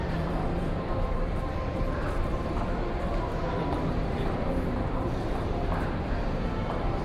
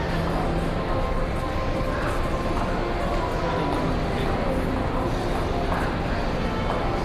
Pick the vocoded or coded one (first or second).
first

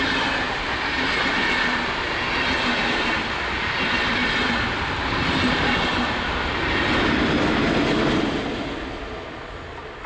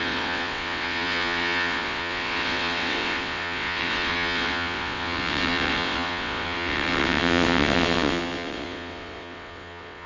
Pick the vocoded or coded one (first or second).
second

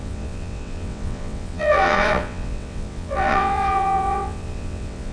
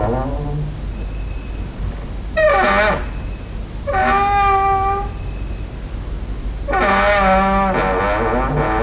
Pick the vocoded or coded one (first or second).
first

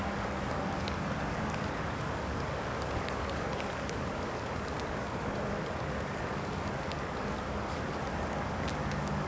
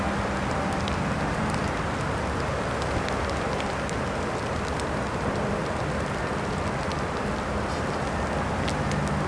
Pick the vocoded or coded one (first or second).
first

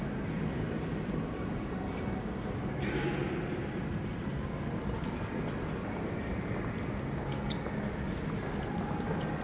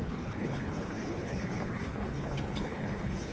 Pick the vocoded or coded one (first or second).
second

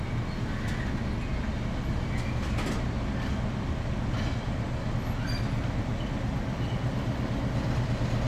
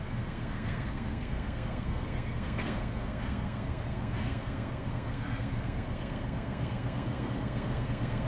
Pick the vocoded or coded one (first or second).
second